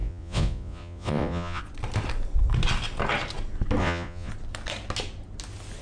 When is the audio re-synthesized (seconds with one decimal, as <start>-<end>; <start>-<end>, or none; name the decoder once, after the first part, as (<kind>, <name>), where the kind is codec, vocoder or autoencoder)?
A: 0.0-1.6 (vocoder, Vocos); 3.8-4.3